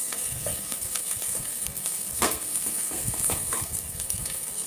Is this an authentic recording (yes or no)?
no